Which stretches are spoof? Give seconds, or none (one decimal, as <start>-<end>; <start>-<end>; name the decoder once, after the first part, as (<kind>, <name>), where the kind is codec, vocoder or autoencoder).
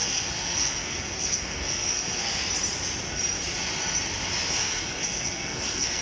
0.0-2.4 (codec, SNAC); 4.6-6.0